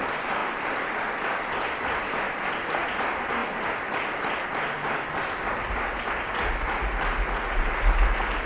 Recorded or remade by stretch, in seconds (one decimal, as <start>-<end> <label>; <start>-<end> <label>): 0.0-0.4 recorded; 0.4-2.5 remade; 2.5-8.5 recorded